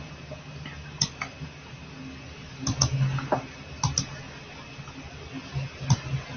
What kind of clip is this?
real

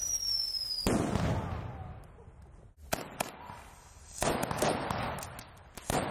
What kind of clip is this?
real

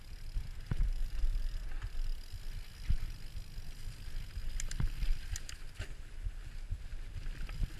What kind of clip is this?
real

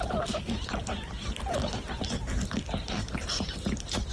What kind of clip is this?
real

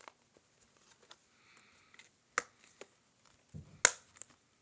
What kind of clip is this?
real